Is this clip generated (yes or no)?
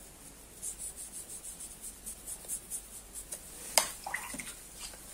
no